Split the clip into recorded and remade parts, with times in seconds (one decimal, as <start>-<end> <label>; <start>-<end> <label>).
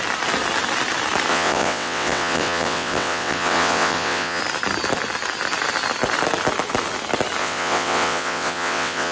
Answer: 0.0-1.3 recorded; 1.3-4.4 remade; 4.4-7.4 recorded; 7.4-9.1 remade